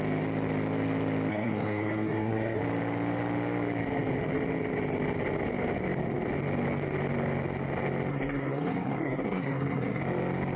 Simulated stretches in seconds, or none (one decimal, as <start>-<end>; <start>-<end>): 1.3-2.6; 8.1-10.0